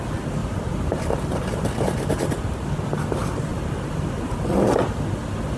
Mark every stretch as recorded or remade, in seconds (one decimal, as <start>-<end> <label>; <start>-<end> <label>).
0.0-0.4 recorded; 0.4-2.1 remade; 2.1-3.5 recorded; 3.5-4.4 remade; 4.4-5.6 recorded